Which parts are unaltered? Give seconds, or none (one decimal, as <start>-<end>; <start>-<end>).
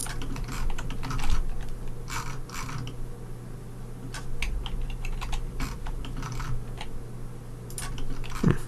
1.4-8.7